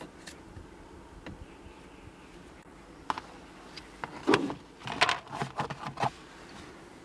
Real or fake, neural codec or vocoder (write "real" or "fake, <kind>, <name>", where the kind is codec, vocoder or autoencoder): real